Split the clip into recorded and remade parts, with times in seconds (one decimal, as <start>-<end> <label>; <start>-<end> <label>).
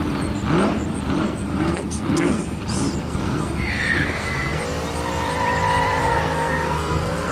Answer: 0.0-1.2 recorded; 1.2-2.6 remade; 2.6-3.0 recorded; 3.0-4.6 remade; 4.6-6.0 recorded; 6.0-7.3 remade